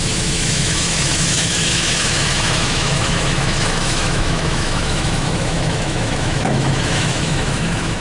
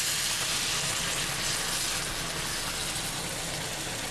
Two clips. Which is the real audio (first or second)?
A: second